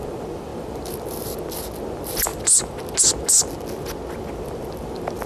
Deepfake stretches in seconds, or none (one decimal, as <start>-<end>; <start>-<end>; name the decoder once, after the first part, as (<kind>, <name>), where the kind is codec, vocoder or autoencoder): 0.0-2.3 (vocoder, BigVGAN v2); 4.2-5.3